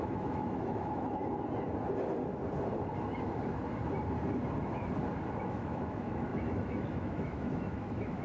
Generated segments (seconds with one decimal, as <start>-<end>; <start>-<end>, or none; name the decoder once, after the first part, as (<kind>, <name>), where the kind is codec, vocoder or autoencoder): 0.0-1.2 (autoencoder, DAC-VAE); 5.4-8.2